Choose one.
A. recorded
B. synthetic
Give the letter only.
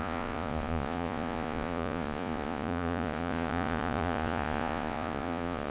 B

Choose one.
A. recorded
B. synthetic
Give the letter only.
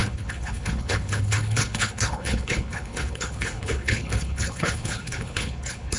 B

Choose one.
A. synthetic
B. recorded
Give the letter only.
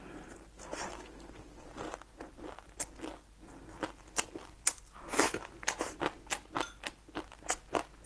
B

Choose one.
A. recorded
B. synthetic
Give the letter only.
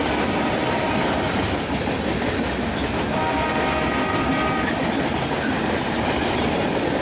A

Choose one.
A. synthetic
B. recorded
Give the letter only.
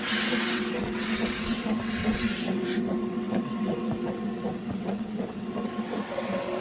A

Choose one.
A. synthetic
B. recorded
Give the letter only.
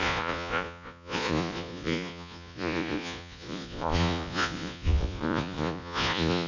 A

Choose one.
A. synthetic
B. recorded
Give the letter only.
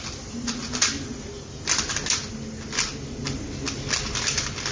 B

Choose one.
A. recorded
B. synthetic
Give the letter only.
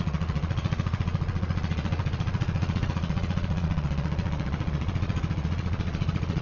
B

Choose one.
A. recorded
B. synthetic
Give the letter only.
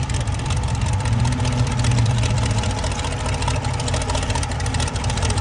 B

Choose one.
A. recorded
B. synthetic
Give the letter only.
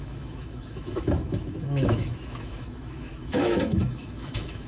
B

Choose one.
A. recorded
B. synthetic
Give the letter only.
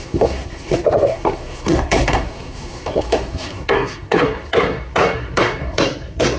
B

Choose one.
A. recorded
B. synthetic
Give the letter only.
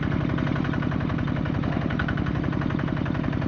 A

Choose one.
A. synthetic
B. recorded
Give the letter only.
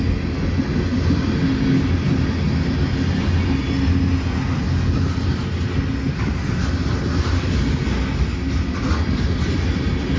B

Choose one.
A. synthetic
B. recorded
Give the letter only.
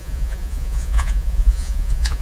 A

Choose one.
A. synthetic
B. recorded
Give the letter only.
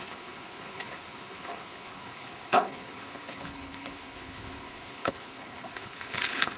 A